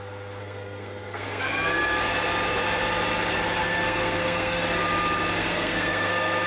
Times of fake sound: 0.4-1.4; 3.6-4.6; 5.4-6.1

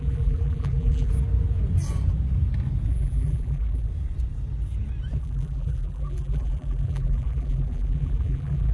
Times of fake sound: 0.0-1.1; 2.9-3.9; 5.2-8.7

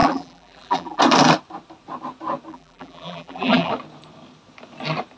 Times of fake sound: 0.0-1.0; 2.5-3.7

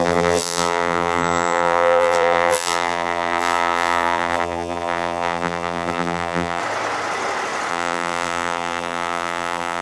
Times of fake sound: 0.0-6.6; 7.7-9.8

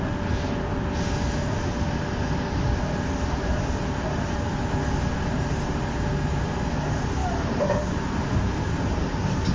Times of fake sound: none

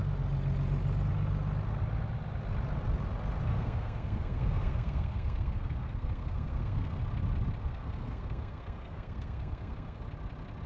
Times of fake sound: 3.5-7.0; 7.6-10.0

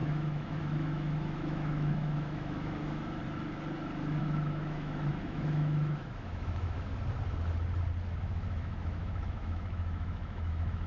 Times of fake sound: 0.0-3.2; 4.2-6.9; 8.2-10.9